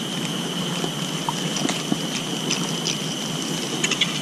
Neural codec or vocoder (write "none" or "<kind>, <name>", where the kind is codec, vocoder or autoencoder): none